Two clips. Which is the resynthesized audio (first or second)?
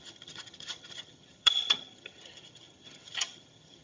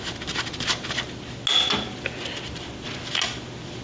first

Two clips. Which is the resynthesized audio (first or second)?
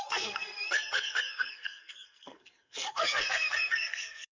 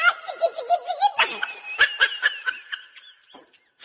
first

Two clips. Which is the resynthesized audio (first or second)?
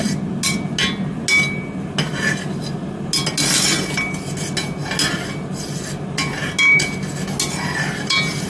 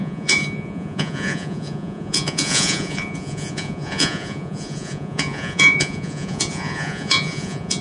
second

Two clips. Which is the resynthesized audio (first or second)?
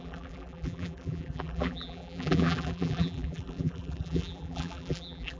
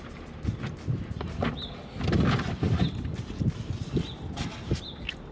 first